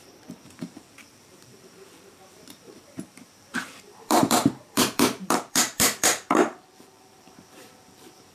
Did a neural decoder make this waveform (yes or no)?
yes